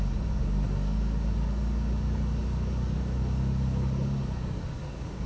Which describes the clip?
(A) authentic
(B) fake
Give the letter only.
B